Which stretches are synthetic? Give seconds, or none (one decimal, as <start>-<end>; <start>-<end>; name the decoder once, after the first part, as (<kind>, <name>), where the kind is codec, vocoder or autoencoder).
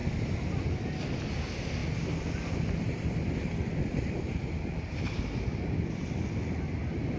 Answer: none